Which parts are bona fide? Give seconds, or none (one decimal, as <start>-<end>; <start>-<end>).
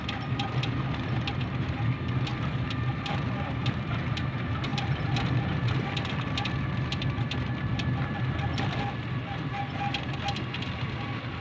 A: 0.0-2.3; 3.9-4.7; 9.5-11.4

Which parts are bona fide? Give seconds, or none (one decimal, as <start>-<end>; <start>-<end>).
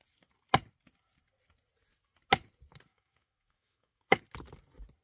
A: 0.0-2.9; 4.2-5.0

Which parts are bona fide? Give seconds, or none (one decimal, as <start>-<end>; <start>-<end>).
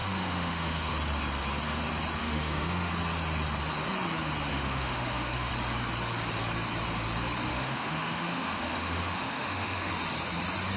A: 0.9-2.2; 2.9-4.5; 5.5-7.5; 9.9-10.8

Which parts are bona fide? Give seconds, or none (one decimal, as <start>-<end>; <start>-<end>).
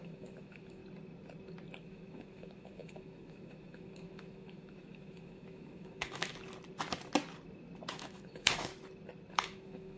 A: 0.8-1.8; 6.3-7.9; 8.7-9.3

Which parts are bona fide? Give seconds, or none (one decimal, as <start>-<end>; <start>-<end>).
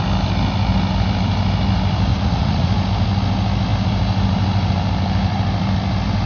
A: 0.0-2.1; 2.7-6.3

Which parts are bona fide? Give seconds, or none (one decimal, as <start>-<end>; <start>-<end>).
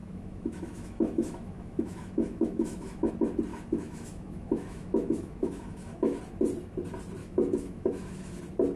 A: 3.1-3.5; 6.2-7.2; 8.4-8.8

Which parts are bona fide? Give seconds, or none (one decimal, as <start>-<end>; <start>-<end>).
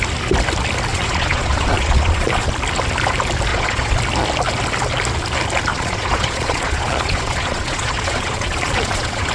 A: 0.0-0.9; 2.5-3.5; 4.0-5.7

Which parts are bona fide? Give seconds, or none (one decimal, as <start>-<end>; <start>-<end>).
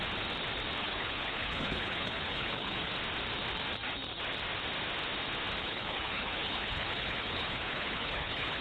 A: 0.0-0.8; 2.9-5.6